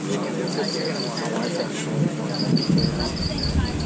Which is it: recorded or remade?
recorded